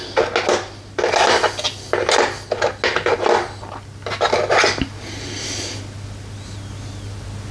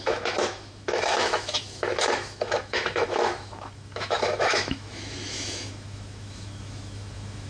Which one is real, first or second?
first